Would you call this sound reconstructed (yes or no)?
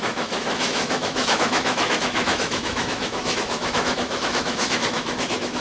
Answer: yes